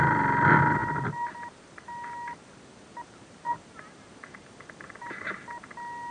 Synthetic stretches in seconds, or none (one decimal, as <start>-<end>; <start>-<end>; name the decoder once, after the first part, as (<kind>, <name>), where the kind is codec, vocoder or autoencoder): none